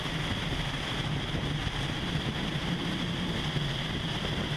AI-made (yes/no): no